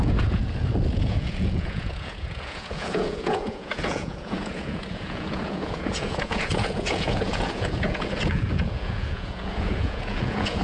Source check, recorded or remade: remade